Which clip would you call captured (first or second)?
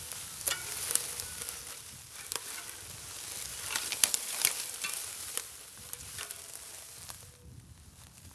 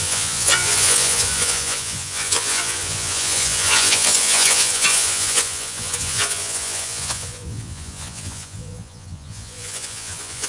first